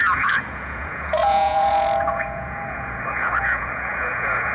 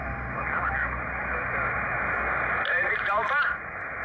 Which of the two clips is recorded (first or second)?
second